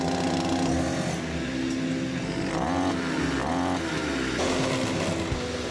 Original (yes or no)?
yes